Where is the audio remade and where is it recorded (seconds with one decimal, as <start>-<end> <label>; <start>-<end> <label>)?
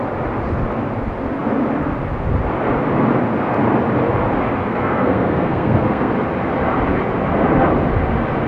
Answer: 0.0-4.6 recorded; 4.6-6.1 remade; 6.1-8.5 recorded